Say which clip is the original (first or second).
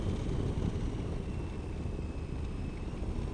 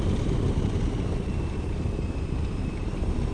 first